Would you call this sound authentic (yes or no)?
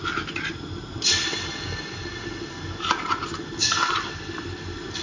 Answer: yes